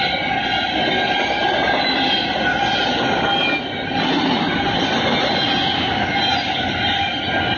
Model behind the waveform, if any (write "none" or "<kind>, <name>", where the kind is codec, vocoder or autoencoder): none